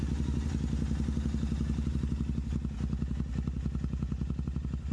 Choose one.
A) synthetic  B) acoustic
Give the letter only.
B